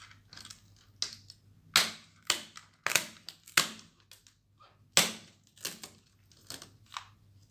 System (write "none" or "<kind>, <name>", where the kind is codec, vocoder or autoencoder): none